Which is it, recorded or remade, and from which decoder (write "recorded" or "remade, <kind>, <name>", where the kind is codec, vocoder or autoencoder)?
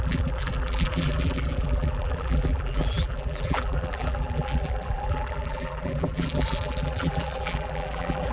remade, vocoder, BigVGAN v2